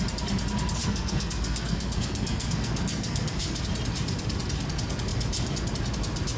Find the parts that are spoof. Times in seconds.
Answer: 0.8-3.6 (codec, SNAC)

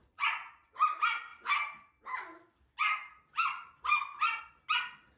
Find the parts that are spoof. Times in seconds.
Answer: 0.0-0.8 (vocoder, Vocos)

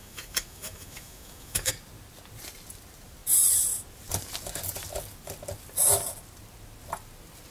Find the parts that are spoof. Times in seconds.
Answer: 0.0-1.7 (autoencoder, DAC-VAE)

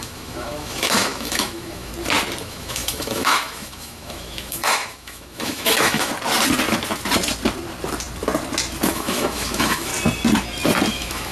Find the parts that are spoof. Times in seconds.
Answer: 0.0-1.9 (autoencoder, DAC-VAE); 2.4-6.1; 8.9-9.9; 10.9-11.3

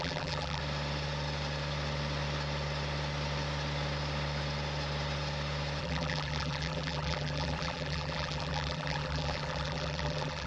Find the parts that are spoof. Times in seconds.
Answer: 0.0-0.6 (vocoder, BigVGAN v2); 5.8-10.5

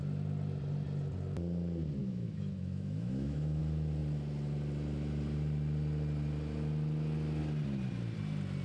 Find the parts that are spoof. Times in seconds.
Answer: 2.0-3.6 (autoencoder, DAC-VAE)

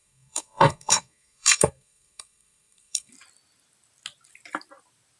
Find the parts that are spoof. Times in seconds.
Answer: 0.0-3.1 (codec, SNAC)

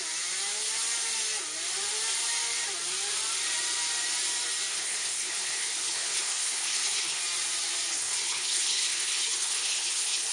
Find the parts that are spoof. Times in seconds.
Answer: 4.7-7.2 (codec, HILCodec); 7.9-10.3